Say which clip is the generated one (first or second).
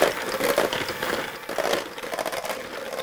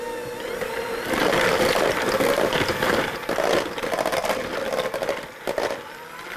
second